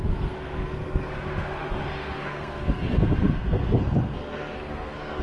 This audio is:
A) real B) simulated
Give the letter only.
B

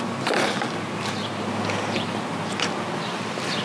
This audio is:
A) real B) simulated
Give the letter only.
A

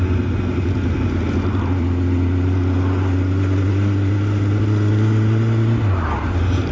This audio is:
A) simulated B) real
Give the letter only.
B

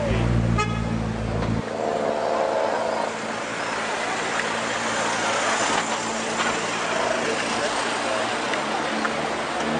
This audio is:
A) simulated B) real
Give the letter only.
B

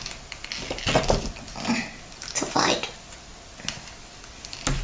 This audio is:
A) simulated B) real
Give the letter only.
B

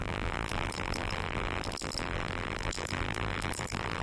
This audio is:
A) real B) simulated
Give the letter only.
B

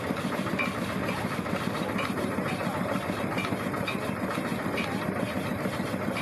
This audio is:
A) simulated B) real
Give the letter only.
B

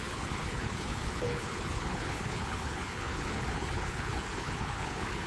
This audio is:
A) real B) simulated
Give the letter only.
B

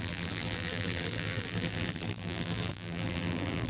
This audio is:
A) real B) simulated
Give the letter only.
B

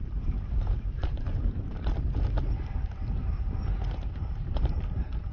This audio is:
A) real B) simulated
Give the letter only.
B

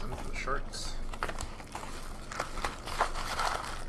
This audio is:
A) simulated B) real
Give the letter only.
B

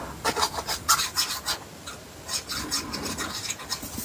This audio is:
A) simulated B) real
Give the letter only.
B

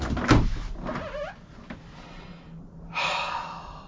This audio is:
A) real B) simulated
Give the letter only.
A